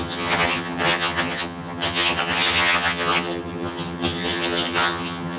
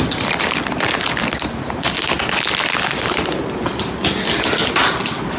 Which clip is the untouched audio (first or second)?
second